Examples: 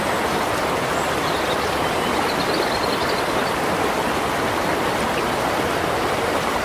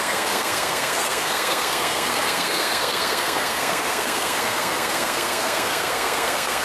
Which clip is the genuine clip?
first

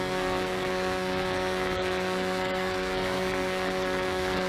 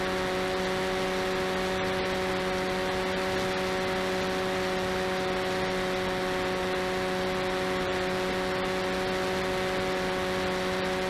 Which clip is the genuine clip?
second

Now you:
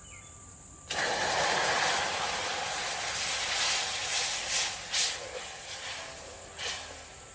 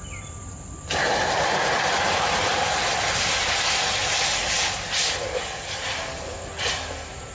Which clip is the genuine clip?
first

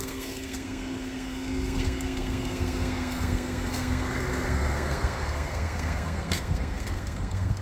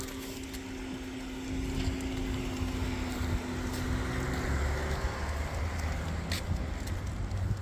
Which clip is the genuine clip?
second